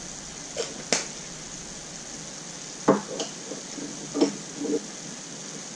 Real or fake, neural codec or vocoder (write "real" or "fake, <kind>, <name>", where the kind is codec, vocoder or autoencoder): real